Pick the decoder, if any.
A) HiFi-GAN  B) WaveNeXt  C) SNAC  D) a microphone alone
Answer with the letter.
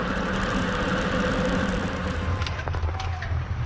D